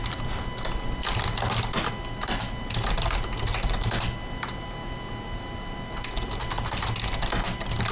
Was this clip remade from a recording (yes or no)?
no